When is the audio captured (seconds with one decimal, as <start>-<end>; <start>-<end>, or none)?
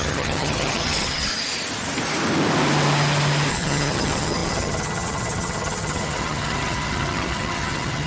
1.3-3.5